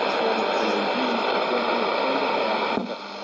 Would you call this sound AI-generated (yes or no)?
no